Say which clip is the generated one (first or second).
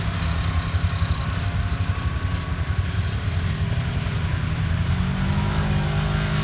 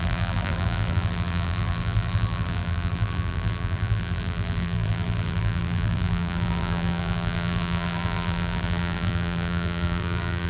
second